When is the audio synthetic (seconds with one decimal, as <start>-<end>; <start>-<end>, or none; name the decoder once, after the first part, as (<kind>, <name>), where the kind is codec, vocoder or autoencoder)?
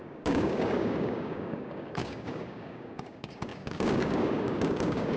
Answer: 0.0-5.2 (codec, DAC)